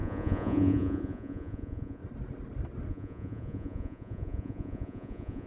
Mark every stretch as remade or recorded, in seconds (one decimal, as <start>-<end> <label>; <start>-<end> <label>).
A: 0.0-2.0 remade; 2.0-2.9 recorded; 2.9-5.5 remade